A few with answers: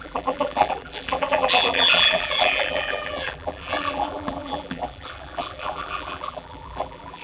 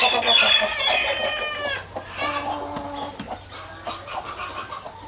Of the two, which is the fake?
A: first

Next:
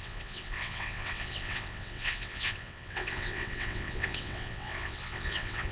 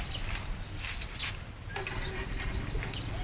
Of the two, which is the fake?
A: first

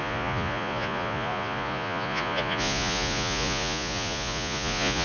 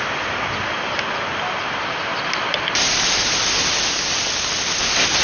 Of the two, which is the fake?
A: first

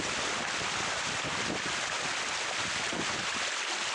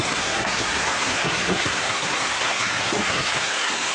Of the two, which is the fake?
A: second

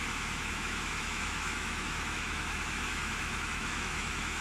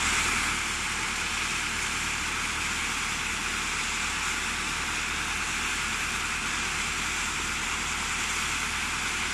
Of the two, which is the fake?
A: first